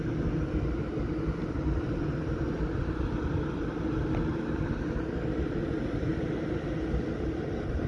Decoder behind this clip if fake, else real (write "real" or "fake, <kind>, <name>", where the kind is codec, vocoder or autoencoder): real